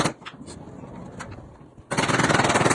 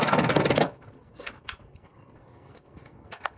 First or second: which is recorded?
first